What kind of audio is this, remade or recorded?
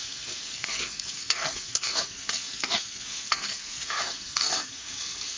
remade